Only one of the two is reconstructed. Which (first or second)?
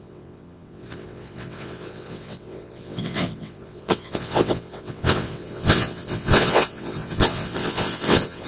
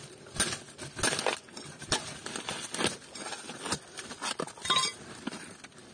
first